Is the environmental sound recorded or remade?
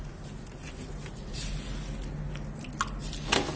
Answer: recorded